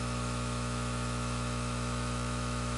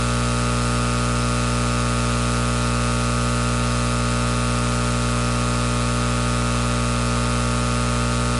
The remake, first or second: first